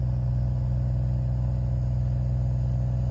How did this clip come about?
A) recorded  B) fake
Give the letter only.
A